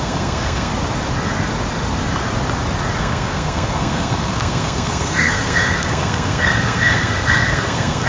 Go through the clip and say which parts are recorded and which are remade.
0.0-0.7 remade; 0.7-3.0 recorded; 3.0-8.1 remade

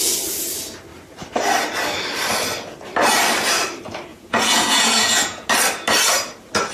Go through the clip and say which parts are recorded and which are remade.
0.0-4.1 recorded; 4.1-5.5 remade; 5.5-6.7 recorded

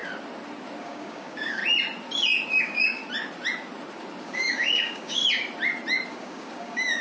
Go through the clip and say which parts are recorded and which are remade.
0.0-0.8 recorded; 0.8-1.6 remade; 1.6-2.5 recorded; 2.5-3.0 remade; 3.0-4.2 recorded; 4.2-5.2 remade; 5.2-6.1 recorded; 6.1-7.0 remade

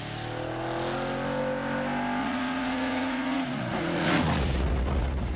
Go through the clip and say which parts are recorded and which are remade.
0.0-2.2 recorded; 2.2-5.4 remade

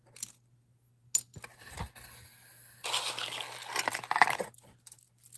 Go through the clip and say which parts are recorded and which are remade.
0.0-5.4 recorded

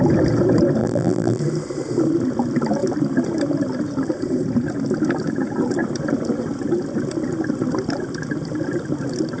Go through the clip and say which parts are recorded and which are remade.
0.0-0.8 recorded; 0.8-1.4 remade; 1.4-9.4 recorded